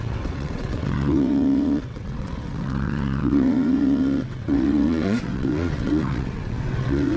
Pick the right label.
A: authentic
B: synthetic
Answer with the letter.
B